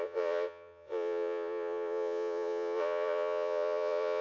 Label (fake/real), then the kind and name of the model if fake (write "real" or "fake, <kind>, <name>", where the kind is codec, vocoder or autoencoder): fake, vocoder, Vocos